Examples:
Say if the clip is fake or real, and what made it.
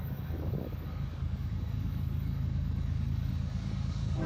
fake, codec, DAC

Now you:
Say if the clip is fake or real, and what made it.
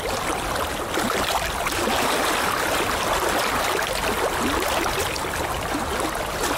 real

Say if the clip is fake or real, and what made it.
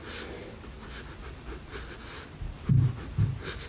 real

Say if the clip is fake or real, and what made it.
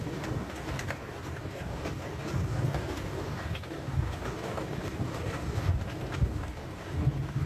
fake, codec, DAC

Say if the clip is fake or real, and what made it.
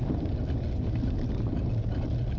real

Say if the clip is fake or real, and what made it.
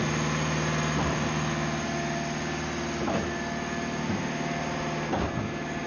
real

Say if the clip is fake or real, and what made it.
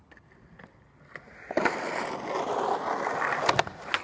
real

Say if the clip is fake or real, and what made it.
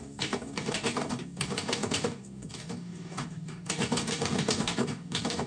fake, codec, DAC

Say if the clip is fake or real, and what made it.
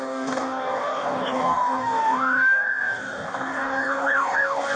fake, codec, DAC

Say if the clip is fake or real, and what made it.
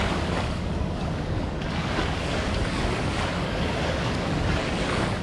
fake, codec, DAC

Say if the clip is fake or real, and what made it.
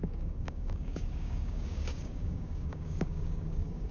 fake, codec, DAC